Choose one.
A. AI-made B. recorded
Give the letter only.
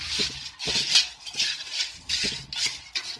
B